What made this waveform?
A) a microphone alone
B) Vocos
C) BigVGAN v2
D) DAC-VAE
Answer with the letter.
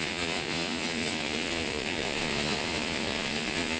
B